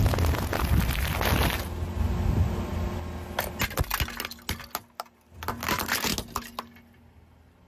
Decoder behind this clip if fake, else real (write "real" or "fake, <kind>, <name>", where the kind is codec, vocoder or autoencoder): real